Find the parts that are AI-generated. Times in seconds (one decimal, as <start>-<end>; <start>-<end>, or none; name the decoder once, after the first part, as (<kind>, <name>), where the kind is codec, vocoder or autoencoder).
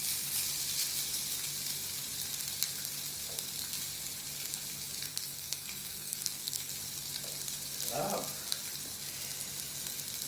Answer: 5.1-6.7 (codec, SNAC)